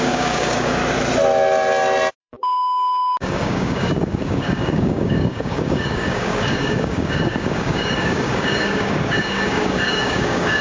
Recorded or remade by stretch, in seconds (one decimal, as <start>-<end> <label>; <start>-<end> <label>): 0.0-0.8 remade; 0.8-2.2 recorded; 2.2-10.6 remade